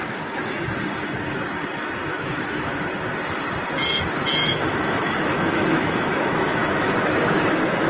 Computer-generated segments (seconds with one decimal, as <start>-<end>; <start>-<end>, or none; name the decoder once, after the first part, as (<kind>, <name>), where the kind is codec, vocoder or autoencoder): 2.1-2.7 (autoencoder, DAC-VAE); 4.4-7.9